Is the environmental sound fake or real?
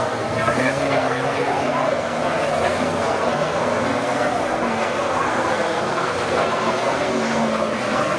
fake